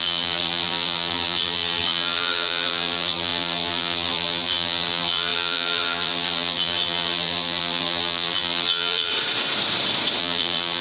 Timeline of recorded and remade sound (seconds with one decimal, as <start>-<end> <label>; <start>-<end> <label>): 0.0-9.1 remade; 9.1-10.2 recorded; 10.2-10.8 remade